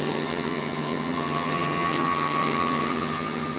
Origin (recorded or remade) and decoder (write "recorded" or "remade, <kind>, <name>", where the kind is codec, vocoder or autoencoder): remade, vocoder, HiFi-GAN